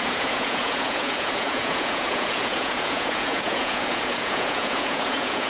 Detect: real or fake fake